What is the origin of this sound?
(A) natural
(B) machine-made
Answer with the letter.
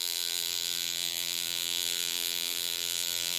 B